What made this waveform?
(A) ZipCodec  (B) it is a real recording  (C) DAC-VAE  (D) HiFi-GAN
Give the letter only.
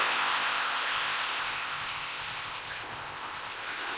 A